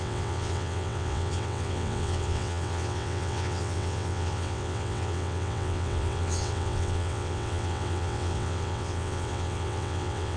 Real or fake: fake